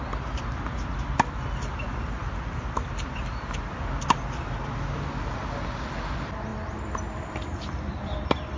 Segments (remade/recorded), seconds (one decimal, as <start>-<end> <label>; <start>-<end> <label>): 0.0-8.6 recorded